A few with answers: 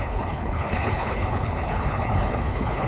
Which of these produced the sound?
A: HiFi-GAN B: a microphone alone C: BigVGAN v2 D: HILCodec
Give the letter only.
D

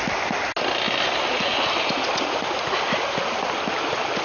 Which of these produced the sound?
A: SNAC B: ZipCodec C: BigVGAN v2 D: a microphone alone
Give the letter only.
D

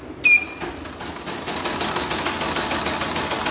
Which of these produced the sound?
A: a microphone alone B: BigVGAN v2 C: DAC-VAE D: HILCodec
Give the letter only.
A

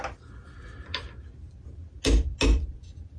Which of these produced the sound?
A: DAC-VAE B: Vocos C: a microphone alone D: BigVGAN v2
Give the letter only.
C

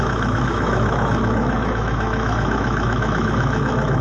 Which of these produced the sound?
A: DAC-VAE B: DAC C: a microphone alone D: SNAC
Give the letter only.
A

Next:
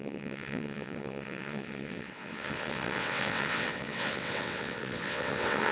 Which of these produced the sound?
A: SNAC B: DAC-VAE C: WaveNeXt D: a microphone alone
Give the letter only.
C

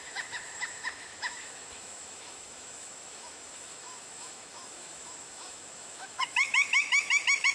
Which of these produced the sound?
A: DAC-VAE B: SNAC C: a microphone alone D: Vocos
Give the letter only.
A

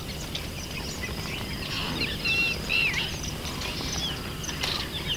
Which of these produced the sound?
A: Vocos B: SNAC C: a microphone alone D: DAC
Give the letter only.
C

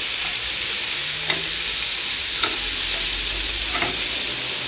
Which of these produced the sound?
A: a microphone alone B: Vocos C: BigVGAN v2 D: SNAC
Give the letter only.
C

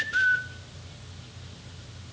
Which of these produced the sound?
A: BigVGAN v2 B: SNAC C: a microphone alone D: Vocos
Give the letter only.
C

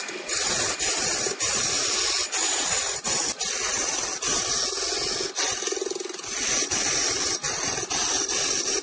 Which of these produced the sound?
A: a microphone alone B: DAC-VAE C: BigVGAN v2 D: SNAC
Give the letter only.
A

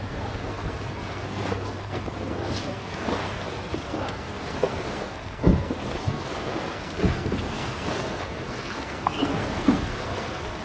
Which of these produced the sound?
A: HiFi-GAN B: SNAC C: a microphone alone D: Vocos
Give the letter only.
B